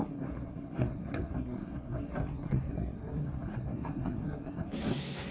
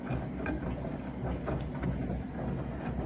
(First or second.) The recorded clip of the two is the second